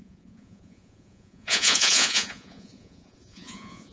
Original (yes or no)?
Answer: no